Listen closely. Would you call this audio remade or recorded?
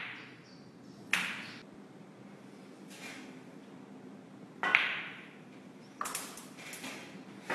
recorded